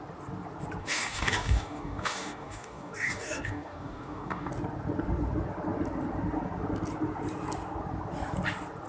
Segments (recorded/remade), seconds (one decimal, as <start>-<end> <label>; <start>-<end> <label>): 0.0-0.8 recorded; 0.8-4.5 remade; 4.5-8.9 recorded